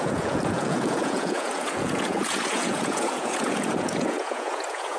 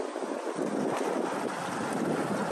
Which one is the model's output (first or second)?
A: first